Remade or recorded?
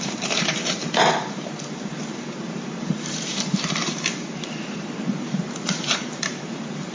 remade